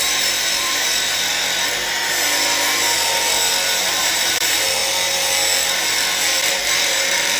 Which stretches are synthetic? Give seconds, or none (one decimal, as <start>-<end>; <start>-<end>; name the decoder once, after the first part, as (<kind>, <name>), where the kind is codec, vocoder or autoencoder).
0.0-1.3 (vocoder, BigVGAN v2); 4.0-4.8; 6.5-7.4